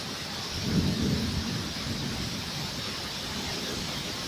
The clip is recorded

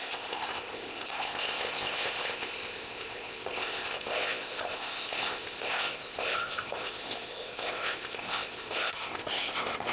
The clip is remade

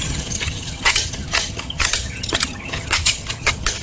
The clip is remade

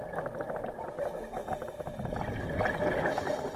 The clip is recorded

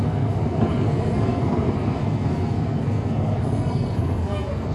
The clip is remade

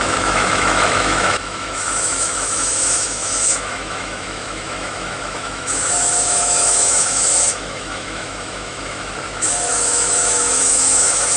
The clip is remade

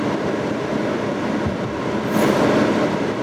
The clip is recorded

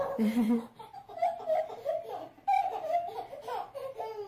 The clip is recorded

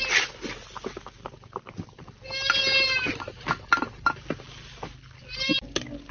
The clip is recorded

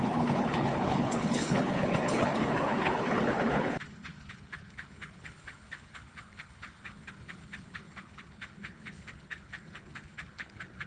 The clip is remade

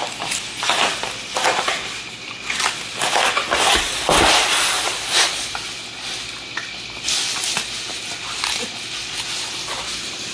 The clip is recorded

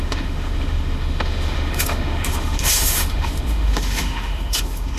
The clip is remade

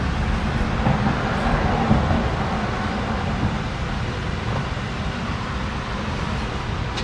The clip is recorded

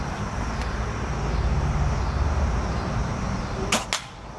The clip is recorded